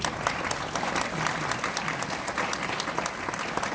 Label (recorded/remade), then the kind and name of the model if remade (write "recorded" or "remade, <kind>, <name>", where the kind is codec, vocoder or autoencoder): recorded